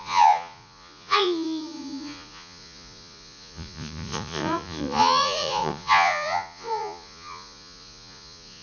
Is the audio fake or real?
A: fake